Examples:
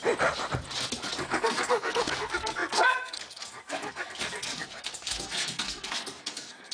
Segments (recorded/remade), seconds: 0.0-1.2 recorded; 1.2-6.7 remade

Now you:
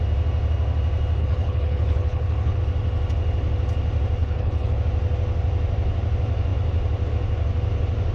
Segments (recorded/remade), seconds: 0.0-1.2 recorded; 1.2-2.6 remade; 2.6-4.2 recorded; 4.2-4.8 remade; 4.8-8.1 recorded

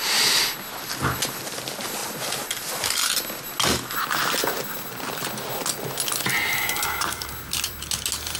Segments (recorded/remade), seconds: 0.0-8.4 recorded

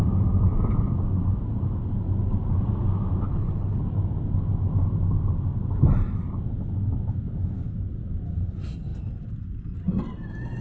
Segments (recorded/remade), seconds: 0.0-3.3 recorded; 3.3-3.8 remade; 3.8-10.6 recorded